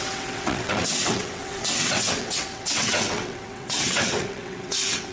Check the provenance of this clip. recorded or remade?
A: remade